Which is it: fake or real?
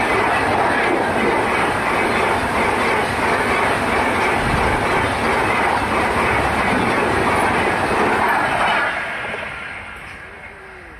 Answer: real